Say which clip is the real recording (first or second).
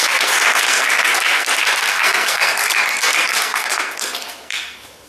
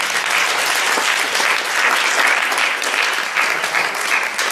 second